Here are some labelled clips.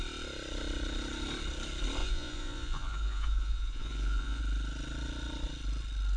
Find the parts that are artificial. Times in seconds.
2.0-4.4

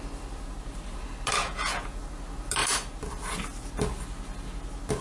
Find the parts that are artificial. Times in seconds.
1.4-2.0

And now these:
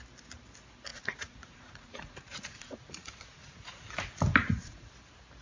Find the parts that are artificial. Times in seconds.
0.9-3.9; 4.4-4.9

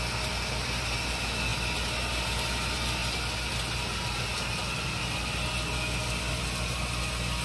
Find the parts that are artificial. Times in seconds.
none

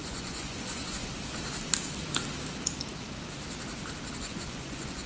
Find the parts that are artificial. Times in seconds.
0.0-1.0; 4.1-5.1